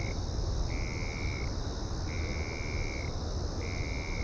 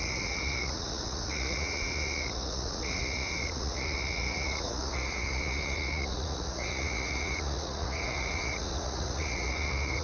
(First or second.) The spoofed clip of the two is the second